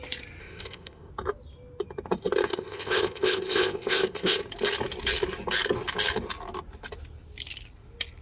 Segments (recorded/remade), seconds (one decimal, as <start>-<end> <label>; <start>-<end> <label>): 0.0-0.4 recorded; 0.4-1.1 remade; 1.1-2.5 recorded; 2.5-4.4 remade; 4.4-8.2 recorded